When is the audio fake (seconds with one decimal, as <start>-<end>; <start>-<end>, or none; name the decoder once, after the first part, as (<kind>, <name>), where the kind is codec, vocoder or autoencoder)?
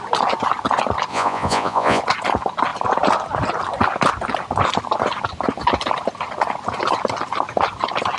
1.1-2.0 (vocoder, Vocos)